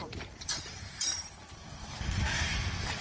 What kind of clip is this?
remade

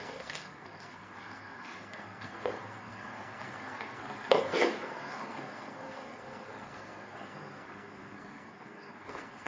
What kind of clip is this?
remade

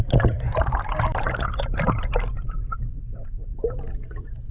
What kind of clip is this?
recorded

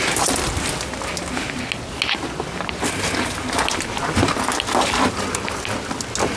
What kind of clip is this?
recorded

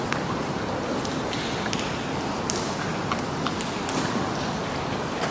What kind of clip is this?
recorded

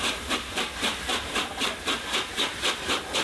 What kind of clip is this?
recorded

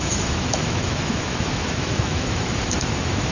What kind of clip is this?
remade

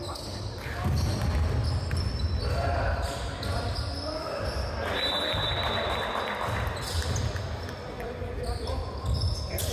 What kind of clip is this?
recorded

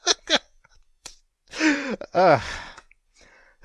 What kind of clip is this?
remade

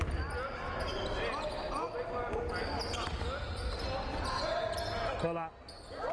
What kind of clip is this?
recorded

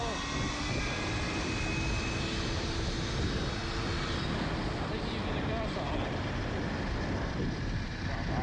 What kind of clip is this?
recorded